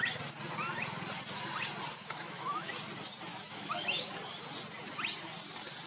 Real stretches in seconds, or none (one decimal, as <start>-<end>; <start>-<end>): 0.0-2.0; 2.7-3.3; 4.1-5.9